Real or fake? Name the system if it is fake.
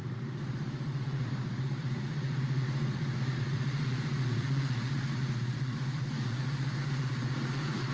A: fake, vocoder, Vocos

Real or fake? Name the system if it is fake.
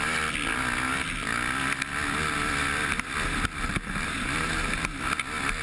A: real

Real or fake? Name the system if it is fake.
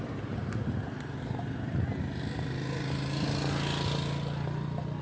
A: real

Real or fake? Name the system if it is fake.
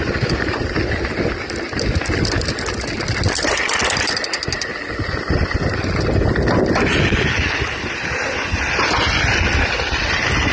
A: real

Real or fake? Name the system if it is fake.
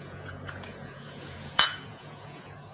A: fake, vocoder, Vocos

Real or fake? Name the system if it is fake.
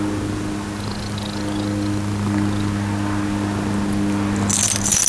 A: real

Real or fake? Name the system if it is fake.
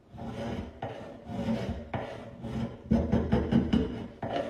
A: real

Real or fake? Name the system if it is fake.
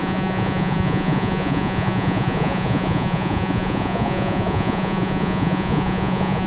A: fake, vocoder, Vocos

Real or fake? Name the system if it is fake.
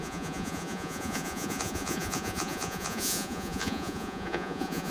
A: fake, vocoder, Vocos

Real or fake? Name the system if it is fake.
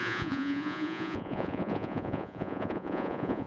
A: fake, vocoder, Vocos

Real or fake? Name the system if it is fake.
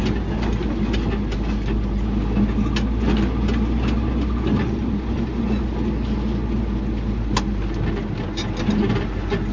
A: real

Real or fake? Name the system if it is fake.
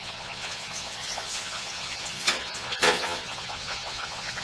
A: fake, vocoder, Vocos